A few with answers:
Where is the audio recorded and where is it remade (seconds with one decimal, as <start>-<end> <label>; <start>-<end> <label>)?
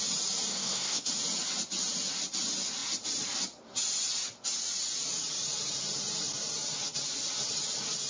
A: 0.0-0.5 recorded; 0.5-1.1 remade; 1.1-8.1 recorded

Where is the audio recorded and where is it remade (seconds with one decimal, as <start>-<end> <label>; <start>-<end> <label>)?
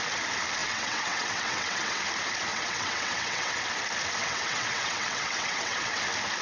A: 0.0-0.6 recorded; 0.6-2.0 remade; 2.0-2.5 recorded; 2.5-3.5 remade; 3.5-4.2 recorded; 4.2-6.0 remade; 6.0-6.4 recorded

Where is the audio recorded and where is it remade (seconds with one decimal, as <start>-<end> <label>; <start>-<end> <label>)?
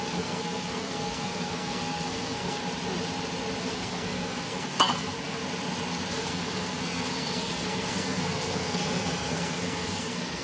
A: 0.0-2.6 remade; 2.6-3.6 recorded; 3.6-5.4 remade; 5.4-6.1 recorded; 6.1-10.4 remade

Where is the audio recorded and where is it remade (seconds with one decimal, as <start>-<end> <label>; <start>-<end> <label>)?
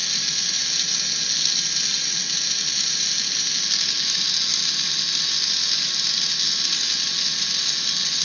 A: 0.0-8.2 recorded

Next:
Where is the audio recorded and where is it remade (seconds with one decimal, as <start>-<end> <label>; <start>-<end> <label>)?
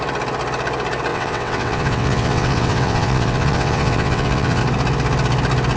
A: 0.0-1.1 recorded; 1.1-4.6 remade; 4.6-5.8 recorded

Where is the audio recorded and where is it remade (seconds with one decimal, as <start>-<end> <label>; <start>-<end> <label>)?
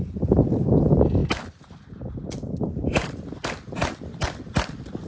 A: 0.0-5.1 recorded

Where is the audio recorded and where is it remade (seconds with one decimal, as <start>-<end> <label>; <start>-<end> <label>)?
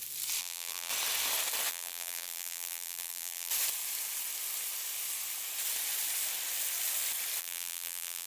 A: 0.0-0.4 recorded; 0.4-0.9 remade; 0.9-1.7 recorded; 1.7-3.5 remade; 3.5-7.4 recorded; 7.4-8.3 remade